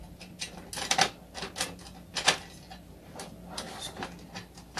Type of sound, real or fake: real